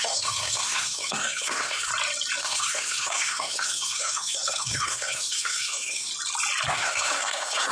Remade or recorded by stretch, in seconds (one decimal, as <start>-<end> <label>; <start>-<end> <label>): 0.0-1.9 remade; 1.9-2.4 recorded; 2.4-6.1 remade; 6.1-6.7 recorded; 6.7-7.7 remade